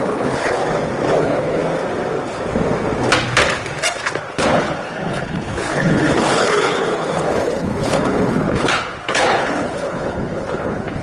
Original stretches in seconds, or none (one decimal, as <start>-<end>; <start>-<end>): 0.6-1.2; 1.6-4.3